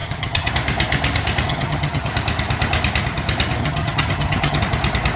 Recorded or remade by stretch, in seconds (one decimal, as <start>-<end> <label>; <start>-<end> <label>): 0.0-0.5 remade; 0.5-1.5 recorded; 1.5-2.1 remade; 2.1-3.6 recorded; 3.6-4.6 remade; 4.6-5.2 recorded